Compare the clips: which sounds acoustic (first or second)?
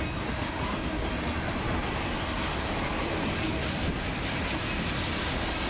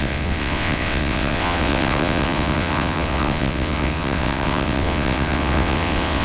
first